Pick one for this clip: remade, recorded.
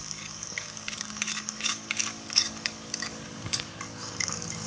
remade